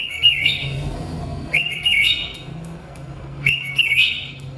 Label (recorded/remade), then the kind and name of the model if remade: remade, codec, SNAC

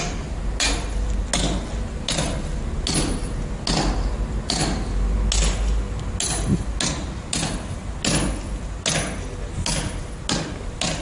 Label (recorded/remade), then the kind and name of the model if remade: recorded